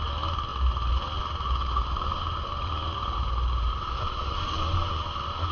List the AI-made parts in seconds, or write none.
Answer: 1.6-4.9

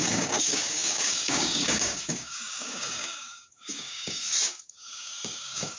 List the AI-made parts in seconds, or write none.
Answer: 0.0-5.8

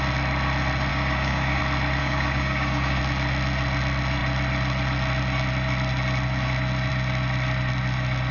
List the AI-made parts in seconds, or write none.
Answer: 0.9-1.6; 2.0-3.0

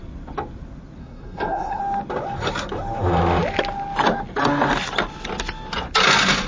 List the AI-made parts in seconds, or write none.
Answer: 1.0-1.8

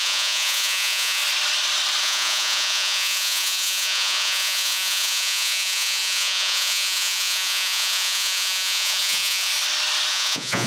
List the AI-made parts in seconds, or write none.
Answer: 0.0-1.2; 2.0-9.5; 10.1-10.7

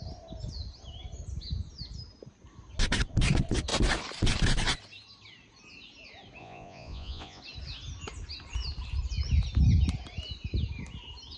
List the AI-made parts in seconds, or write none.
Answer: 6.4-7.4

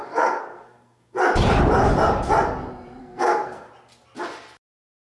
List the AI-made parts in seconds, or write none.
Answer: 0.0-1.2; 3.0-3.7